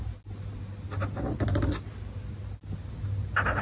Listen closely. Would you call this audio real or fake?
real